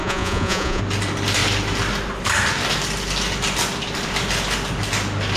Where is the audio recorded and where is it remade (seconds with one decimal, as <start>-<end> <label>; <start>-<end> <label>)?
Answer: 0.0-0.8 remade; 0.8-5.4 recorded